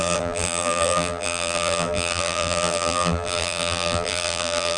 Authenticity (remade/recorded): remade